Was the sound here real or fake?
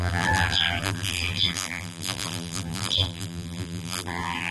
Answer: fake